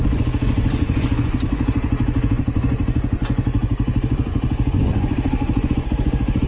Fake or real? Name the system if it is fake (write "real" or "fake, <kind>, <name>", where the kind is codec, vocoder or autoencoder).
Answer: fake, vocoder, Vocos